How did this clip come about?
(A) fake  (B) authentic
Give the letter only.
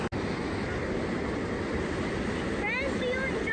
B